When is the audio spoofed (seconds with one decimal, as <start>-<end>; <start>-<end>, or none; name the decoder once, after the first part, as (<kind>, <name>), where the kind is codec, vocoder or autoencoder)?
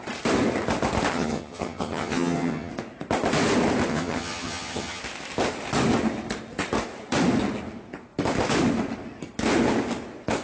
1.1-2.7 (vocoder, HiFi-GAN); 3.9-5.0